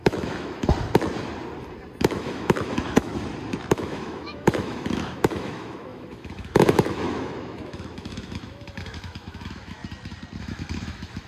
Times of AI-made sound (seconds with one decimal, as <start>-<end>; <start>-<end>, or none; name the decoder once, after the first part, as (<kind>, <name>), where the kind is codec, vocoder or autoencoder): 0.0-0.7 (autoencoder, DAC-VAE); 2.0-3.1; 3.7-9.8; 10.4-11.3